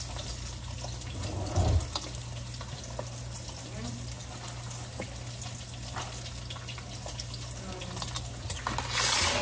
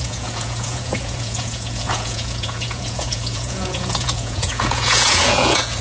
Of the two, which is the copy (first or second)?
second